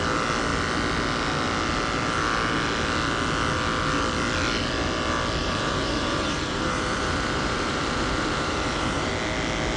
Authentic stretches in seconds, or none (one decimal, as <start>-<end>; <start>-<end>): 0.0-5.4; 9.1-9.8